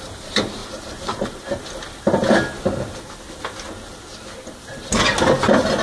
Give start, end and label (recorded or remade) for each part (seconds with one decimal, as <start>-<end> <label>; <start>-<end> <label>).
0.0-0.6 recorded; 0.6-1.6 remade; 1.6-5.8 recorded

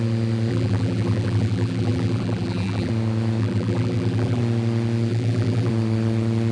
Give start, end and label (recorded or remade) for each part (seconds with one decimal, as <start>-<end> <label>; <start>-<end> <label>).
0.0-0.5 recorded; 0.5-2.9 remade; 2.9-3.4 recorded; 3.4-4.4 remade; 4.4-5.1 recorded; 5.1-5.7 remade; 5.7-6.5 recorded

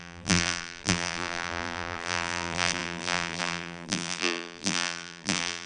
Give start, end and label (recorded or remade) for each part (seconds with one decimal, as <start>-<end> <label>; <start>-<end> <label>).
0.0-5.7 remade

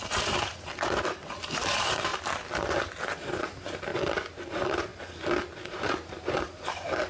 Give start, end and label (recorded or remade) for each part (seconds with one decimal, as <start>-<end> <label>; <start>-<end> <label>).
0.0-2.1 remade; 2.1-3.4 recorded; 3.4-3.9 remade; 3.9-4.5 recorded; 4.5-4.9 remade; 4.9-5.6 recorded; 5.6-7.1 remade

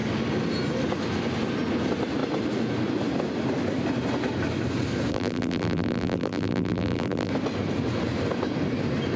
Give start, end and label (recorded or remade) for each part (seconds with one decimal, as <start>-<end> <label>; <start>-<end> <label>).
0.0-5.1 recorded; 5.1-7.3 remade; 7.3-9.2 recorded

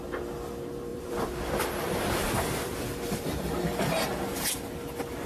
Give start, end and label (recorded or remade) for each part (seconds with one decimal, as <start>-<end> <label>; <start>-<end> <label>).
0.0-0.9 recorded; 0.9-4.1 remade; 4.1-5.3 recorded